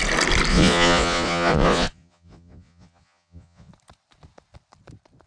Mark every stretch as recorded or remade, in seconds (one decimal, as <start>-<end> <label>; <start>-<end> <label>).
0.0-0.5 recorded; 0.5-3.7 remade; 3.7-5.3 recorded